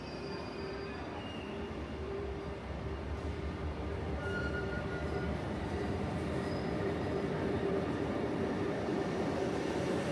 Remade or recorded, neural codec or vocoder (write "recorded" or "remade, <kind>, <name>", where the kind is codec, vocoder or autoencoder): remade, vocoder, BigVGAN v2